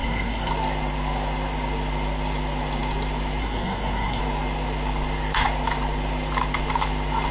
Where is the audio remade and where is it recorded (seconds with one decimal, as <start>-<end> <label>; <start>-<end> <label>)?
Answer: 0.0-0.5 remade; 0.5-3.4 recorded; 3.4-4.2 remade; 4.2-7.3 recorded